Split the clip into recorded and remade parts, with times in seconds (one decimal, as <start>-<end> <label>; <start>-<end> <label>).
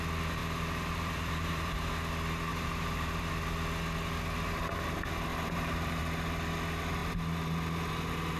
0.0-0.4 recorded; 0.4-1.9 remade; 1.9-2.5 recorded; 2.5-3.3 remade; 3.3-5.3 recorded; 5.3-6.0 remade; 6.0-8.4 recorded